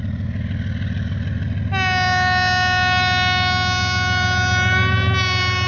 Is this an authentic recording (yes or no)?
yes